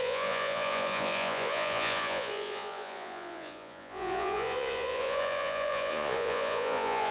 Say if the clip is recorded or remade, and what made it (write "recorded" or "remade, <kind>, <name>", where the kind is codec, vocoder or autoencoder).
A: remade, vocoder, Vocos